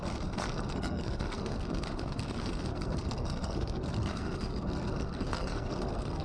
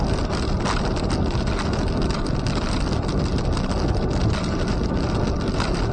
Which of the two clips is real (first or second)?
second